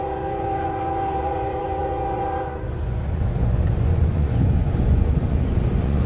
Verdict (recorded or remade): remade